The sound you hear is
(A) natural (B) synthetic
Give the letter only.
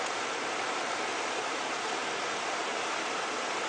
B